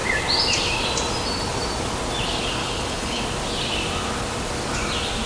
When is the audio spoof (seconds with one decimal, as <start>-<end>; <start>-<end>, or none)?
2.6-3.2